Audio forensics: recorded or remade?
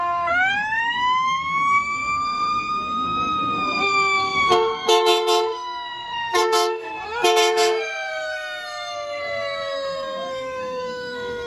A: remade